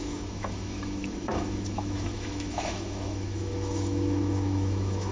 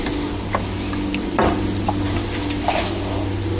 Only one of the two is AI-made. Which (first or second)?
first